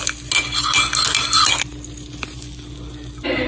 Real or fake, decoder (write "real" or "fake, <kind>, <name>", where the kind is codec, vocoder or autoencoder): real